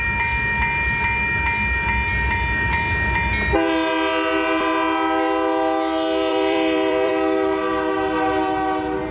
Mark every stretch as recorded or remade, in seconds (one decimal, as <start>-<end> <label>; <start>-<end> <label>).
0.0-6.3 recorded; 6.3-7.1 remade; 7.1-9.1 recorded

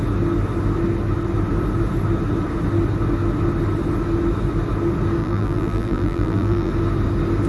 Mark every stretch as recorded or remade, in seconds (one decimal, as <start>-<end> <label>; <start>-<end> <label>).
0.0-5.2 recorded; 5.2-6.7 remade; 6.7-7.5 recorded

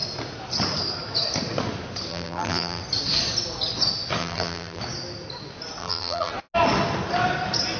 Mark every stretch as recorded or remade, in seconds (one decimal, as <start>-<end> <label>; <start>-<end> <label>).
0.0-2.1 recorded; 2.1-2.8 remade; 2.8-4.2 recorded; 4.2-4.8 remade; 4.8-5.8 recorded; 5.8-6.3 remade; 6.3-7.8 recorded

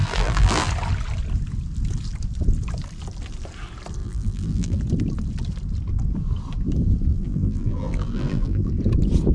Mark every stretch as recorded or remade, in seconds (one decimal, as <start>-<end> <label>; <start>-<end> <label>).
0.0-0.7 remade; 0.7-4.0 recorded; 4.0-4.8 remade; 4.8-7.1 recorded; 7.1-8.7 remade; 8.7-9.3 recorded

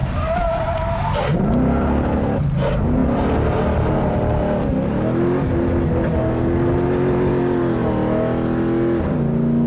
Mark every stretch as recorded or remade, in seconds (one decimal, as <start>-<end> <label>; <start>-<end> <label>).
0.0-9.7 recorded